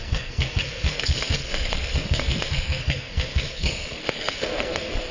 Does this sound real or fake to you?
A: fake